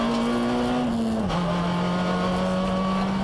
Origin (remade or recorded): recorded